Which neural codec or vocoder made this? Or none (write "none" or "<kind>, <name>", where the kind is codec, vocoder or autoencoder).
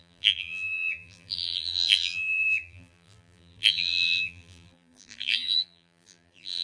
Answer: vocoder, BigVGAN v2